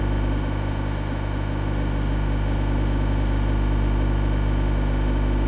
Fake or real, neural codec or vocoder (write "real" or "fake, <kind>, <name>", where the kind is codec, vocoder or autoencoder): fake, autoencoder, DAC-VAE